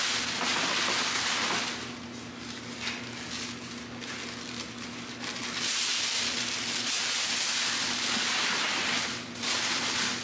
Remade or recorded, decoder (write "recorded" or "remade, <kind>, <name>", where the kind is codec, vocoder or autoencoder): recorded